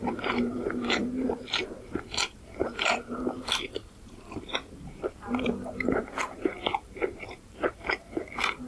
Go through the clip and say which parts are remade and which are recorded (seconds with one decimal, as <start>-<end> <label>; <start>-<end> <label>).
0.0-8.7 remade